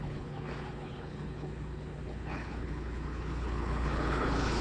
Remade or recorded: remade